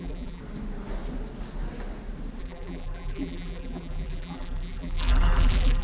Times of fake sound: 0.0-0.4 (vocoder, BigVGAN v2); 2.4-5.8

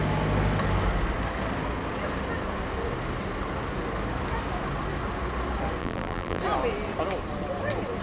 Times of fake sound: 5.8-6.4 (vocoder, BigVGAN v2)

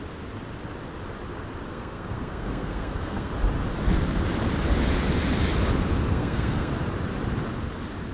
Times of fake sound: 1.7-3.3 (codec, SNAC); 6.1-6.7

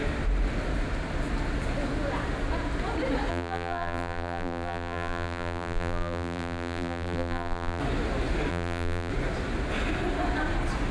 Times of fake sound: 3.3-7.8 (vocoder, BigVGAN v2); 8.5-9.1

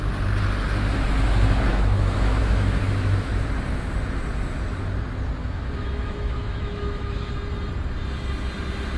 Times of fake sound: 1.7-3.3 (autoencoder, DAC-VAE); 5.4-7.3

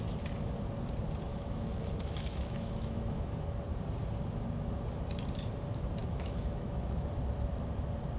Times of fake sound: 1.3-3.5 (autoencoder, DAC-VAE); 6.0-7.1